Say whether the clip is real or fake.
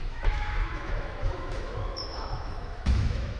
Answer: fake